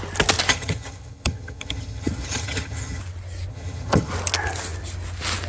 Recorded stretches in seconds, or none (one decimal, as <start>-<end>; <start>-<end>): 0.0-0.5; 3.0-3.5; 4.1-5.5